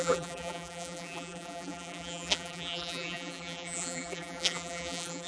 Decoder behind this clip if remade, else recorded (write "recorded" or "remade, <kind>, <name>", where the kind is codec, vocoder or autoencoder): remade, vocoder, BigVGAN v2